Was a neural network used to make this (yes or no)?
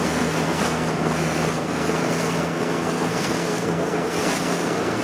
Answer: yes